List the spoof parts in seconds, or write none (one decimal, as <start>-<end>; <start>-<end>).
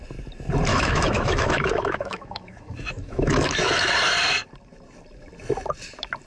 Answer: 0.7-3.9